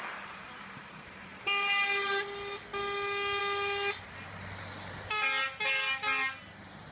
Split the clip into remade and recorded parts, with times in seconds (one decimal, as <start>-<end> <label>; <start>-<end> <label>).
0.0-6.9 recorded